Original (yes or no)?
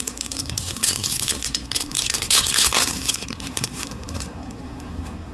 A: no